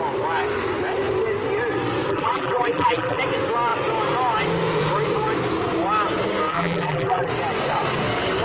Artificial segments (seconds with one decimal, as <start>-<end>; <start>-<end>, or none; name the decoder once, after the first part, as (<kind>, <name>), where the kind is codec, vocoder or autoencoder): 2.1-3.2 (vocoder, BigVGAN v2); 6.5-7.3